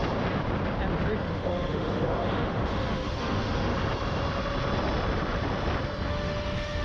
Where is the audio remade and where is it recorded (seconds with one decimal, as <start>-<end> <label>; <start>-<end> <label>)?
0.0-1.3 recorded; 1.3-3.7 remade; 3.7-6.1 recorded; 6.1-6.8 remade